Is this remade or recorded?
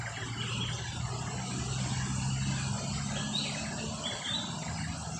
recorded